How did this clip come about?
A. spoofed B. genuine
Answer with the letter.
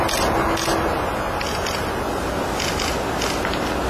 B